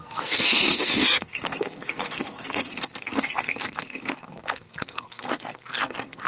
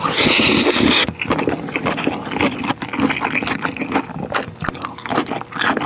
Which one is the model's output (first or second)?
first